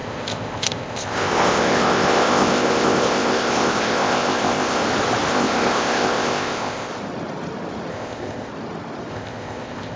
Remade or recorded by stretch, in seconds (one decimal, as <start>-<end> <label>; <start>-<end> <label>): 0.0-4.8 remade; 4.8-5.3 recorded; 5.3-6.9 remade; 6.9-7.9 recorded; 7.9-8.5 remade; 8.5-9.1 recorded; 9.1-10.0 remade